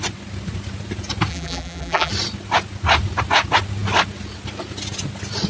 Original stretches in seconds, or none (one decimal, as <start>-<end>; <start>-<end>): 0.0-1.3; 2.1-5.5